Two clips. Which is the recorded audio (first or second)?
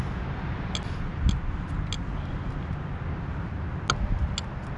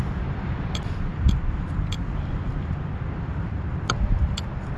first